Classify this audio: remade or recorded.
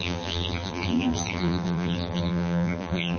remade